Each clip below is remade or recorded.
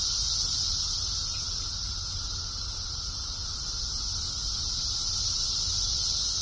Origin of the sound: recorded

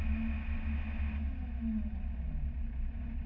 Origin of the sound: recorded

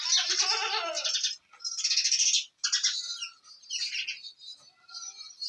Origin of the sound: recorded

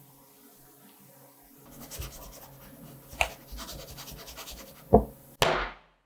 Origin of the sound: recorded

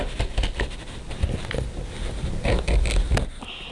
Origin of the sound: recorded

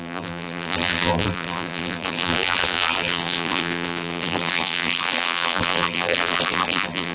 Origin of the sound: remade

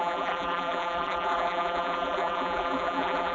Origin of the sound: remade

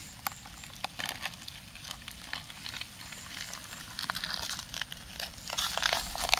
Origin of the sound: recorded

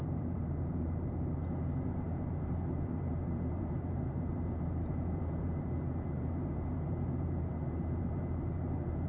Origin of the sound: remade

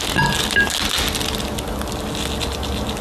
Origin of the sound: recorded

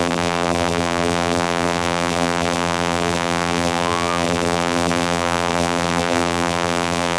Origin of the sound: remade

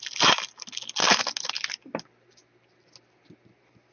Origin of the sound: recorded